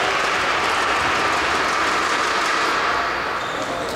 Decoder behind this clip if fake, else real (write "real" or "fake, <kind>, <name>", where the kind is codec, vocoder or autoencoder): real